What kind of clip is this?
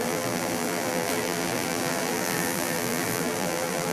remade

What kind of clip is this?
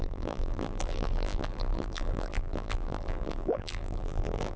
remade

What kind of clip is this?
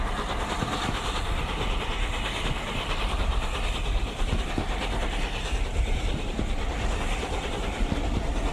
recorded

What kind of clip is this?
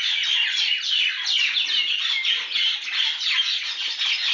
recorded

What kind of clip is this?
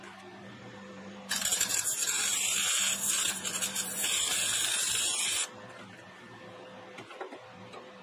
remade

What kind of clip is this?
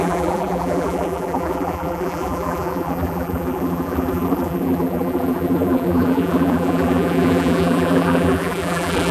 remade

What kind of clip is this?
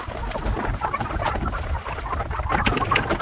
remade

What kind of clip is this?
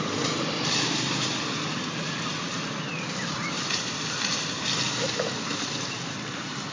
remade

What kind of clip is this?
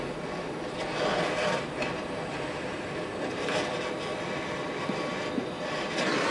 recorded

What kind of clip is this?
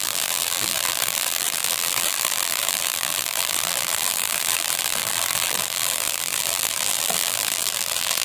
remade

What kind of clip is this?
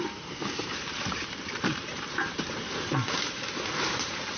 remade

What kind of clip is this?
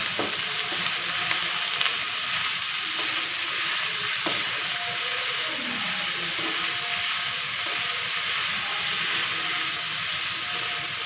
recorded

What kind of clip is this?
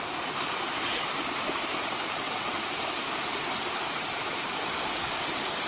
remade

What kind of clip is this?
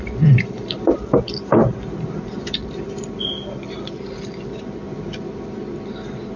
remade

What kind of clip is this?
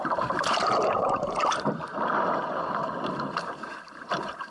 remade